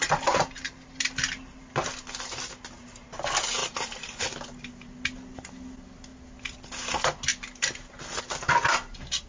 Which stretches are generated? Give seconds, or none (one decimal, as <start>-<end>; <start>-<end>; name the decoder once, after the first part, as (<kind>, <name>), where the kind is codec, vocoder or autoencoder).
0.0-1.0 (vocoder, BigVGAN v2); 3.6-4.2